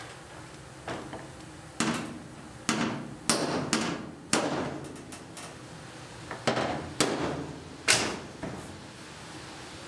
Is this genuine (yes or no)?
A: yes